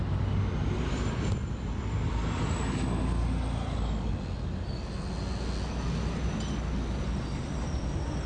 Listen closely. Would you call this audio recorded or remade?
recorded